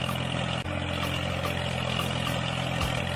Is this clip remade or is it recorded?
recorded